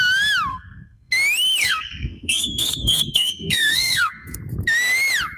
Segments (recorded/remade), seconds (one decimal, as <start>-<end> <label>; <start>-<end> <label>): 0.0-0.5 recorded; 0.5-1.1 remade; 1.1-1.6 recorded; 1.6-4.4 remade; 4.4-5.4 recorded